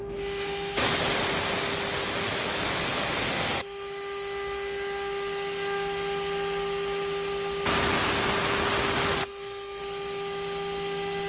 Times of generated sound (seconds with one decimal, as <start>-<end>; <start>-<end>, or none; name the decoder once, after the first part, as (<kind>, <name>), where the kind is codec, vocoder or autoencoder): 9.2-9.8 (codec, SNAC)